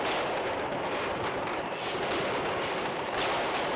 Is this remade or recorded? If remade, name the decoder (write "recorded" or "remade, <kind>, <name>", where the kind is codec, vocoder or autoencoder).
recorded